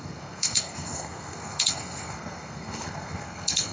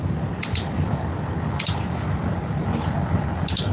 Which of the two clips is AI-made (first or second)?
first